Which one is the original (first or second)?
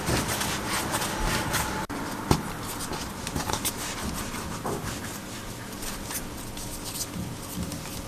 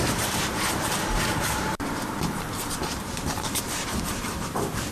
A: first